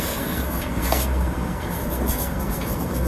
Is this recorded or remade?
remade